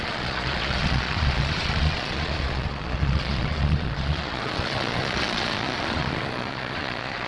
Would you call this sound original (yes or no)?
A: no